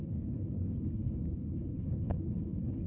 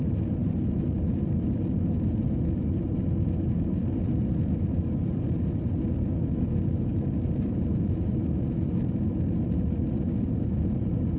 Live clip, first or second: second